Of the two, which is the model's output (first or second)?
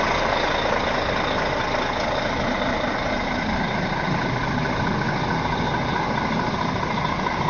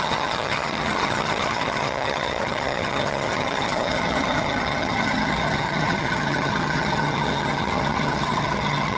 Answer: second